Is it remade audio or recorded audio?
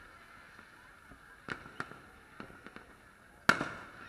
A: recorded